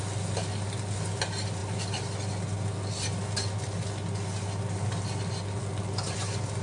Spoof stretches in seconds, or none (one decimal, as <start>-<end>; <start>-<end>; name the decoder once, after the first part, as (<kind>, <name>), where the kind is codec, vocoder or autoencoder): none